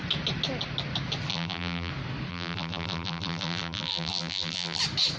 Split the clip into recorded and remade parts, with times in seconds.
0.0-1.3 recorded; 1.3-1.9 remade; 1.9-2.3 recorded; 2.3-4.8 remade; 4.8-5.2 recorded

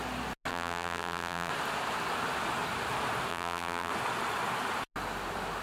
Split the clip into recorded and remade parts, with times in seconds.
0.0-0.5 recorded; 0.5-1.5 remade; 1.5-3.3 recorded; 3.3-3.9 remade; 3.9-5.6 recorded

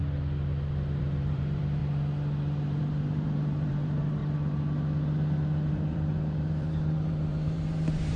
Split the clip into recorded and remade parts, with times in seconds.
0.0-1.0 recorded; 1.0-1.8 remade; 1.8-2.8 recorded; 2.8-4.2 remade; 4.2-5.7 recorded; 5.7-8.2 remade

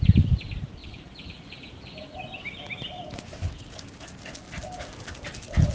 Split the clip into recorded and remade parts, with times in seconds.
0.0-0.8 recorded; 0.8-4.2 remade; 4.2-5.7 recorded

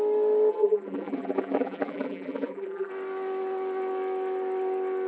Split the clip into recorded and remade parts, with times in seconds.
0.0-0.5 recorded; 0.5-2.9 remade; 2.9-5.1 recorded

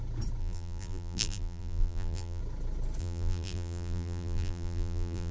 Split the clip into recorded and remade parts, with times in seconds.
0.0-0.4 recorded; 0.4-2.4 remade; 2.4-3.0 recorded; 3.0-5.3 remade

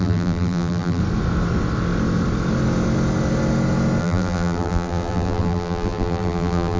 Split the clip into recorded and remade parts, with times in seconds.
0.0-1.0 remade; 1.0-4.0 recorded; 4.0-6.8 remade

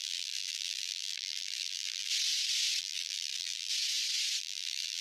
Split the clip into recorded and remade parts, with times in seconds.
0.0-2.1 remade; 2.1-2.8 recorded; 2.8-3.7 remade; 3.7-4.4 recorded; 4.4-5.0 remade